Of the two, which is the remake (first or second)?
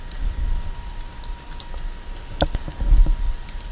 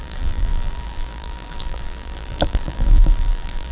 second